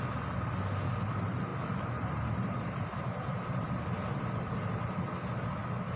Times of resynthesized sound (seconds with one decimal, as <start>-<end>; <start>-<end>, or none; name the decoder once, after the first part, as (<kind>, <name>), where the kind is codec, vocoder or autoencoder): none